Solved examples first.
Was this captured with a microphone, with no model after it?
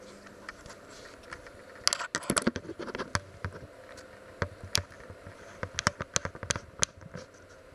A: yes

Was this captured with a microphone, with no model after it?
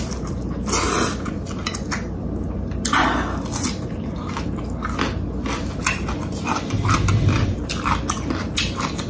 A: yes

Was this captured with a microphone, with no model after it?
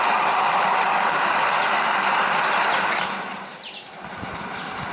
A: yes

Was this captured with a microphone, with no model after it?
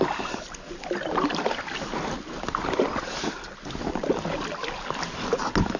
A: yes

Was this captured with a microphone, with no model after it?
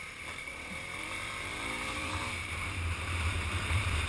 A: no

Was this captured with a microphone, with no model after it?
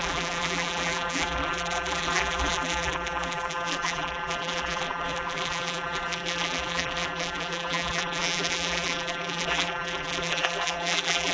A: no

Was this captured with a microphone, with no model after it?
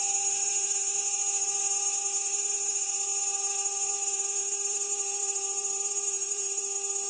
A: no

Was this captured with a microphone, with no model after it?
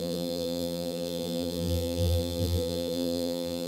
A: no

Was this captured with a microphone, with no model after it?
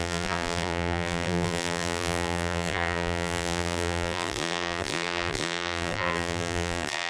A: no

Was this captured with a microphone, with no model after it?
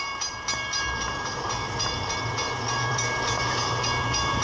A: no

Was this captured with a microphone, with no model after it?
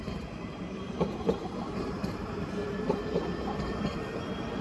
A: no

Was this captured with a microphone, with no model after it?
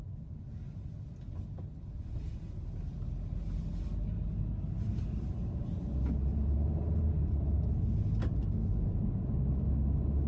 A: yes